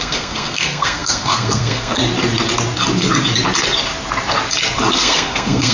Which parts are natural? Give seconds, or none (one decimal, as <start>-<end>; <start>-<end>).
2.0-4.9